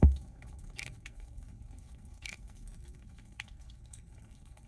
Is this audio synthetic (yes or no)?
yes